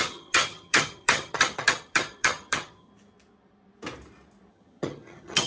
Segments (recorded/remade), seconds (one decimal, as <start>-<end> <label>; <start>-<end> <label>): 0.0-2.9 remade; 2.9-4.5 recorded; 4.5-5.5 remade